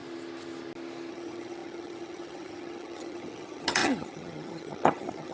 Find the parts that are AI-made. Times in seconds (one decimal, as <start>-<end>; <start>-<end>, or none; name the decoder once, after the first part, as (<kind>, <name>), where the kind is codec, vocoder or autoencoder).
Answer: 1.1-5.3 (vocoder, HiFi-GAN)